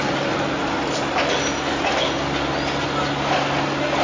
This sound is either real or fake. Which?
real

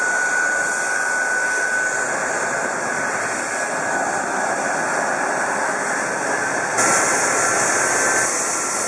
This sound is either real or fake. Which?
real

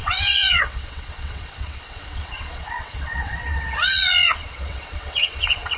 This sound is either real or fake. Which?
fake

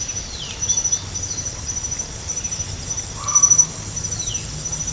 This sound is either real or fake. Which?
real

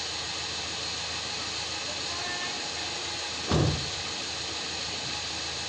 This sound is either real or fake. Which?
real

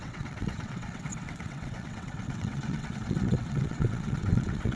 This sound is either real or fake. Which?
fake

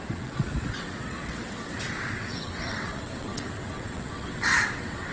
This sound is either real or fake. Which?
fake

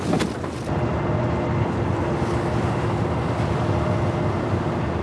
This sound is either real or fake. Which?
real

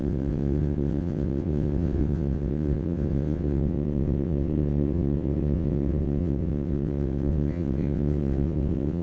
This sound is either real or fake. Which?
fake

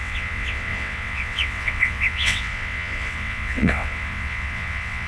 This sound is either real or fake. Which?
fake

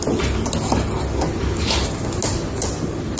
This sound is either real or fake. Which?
real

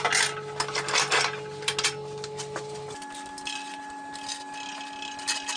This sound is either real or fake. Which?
real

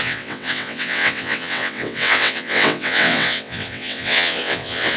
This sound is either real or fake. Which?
fake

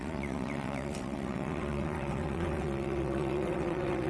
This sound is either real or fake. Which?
fake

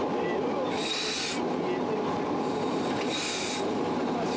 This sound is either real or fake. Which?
real